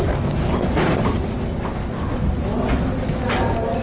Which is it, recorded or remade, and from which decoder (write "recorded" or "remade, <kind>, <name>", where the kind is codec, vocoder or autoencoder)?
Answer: recorded